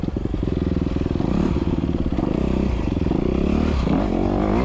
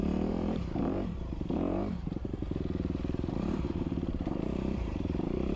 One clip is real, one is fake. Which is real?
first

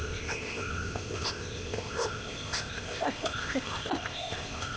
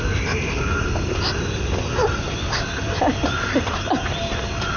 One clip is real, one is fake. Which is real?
second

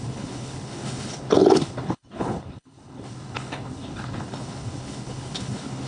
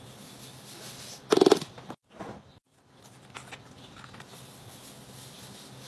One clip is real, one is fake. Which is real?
second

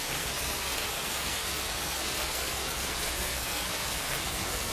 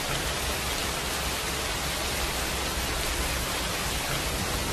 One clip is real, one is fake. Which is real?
second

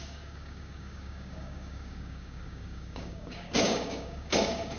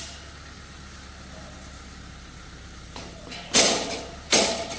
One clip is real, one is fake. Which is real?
second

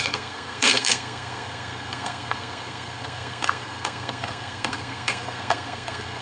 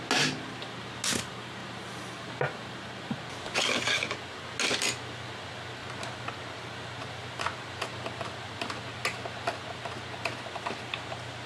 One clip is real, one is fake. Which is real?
second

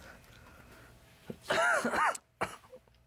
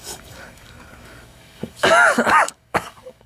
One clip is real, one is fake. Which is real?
first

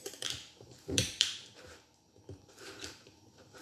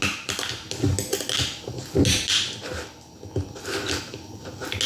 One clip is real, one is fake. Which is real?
second